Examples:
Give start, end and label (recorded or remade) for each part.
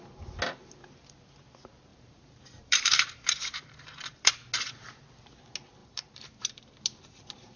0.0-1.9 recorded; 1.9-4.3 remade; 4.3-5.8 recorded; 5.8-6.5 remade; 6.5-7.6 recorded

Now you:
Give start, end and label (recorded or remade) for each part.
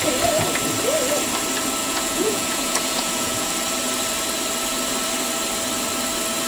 0.0-1.8 recorded; 1.8-3.5 remade; 3.5-6.5 recorded